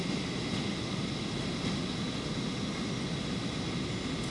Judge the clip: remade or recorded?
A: recorded